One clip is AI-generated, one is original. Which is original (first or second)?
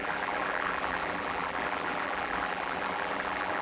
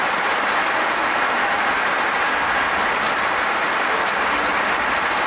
second